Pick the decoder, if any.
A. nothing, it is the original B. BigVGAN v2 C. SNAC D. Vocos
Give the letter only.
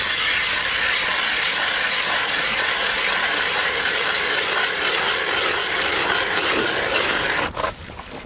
A